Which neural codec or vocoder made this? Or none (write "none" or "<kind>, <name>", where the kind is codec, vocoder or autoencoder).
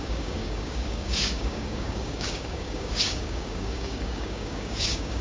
codec, DAC